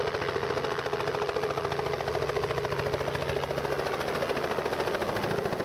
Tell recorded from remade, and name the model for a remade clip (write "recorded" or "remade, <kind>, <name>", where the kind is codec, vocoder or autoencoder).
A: recorded